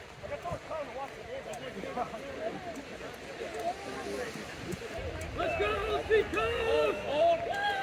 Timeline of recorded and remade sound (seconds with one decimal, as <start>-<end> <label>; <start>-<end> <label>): 0.0-6.3 recorded; 6.3-7.2 remade; 7.2-7.8 recorded